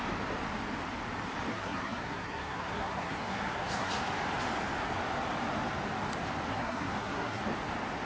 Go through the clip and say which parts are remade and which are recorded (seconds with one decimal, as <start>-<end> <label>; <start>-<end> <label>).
0.0-1.5 recorded; 1.5-4.0 remade; 4.0-6.5 recorded; 6.5-7.4 remade; 7.4-8.1 recorded